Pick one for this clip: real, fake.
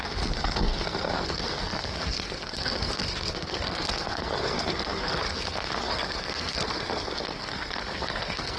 fake